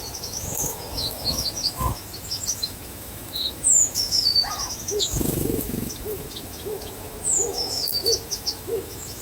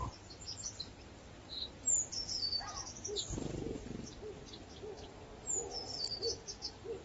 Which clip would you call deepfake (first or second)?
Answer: first